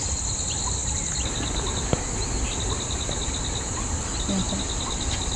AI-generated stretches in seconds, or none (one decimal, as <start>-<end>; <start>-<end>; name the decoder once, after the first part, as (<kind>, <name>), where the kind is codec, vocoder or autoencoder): none